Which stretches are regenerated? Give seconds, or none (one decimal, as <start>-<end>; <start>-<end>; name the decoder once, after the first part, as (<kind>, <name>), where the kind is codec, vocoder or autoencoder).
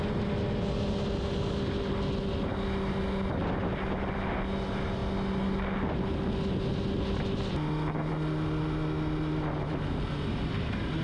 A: none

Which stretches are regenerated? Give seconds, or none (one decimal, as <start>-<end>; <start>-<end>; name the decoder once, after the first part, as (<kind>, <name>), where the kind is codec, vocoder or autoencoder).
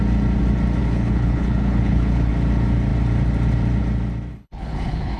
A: 0.8-2.3 (codec, HILCodec); 4.3-5.2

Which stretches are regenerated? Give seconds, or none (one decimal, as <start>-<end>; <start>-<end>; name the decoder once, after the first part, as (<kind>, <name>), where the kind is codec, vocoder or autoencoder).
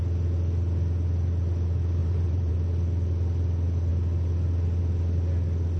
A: 2.0-2.5 (vocoder, BigVGAN v2)